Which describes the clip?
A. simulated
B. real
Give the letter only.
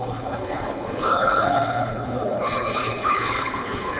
A